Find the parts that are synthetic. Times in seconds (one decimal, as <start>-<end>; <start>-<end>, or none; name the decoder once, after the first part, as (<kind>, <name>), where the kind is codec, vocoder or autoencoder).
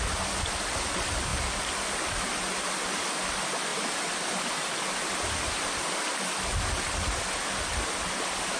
none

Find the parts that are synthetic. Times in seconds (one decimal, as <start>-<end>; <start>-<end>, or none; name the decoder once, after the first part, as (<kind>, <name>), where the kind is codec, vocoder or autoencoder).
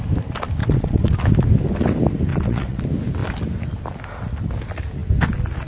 0.6-1.1 (vocoder, WaveNeXt); 2.3-2.8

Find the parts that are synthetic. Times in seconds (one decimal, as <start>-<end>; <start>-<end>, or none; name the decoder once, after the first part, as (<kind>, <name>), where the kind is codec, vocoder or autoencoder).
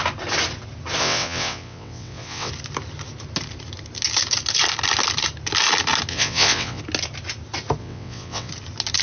1.0-2.5 (vocoder, WaveNeXt); 6.1-6.8; 7.8-8.5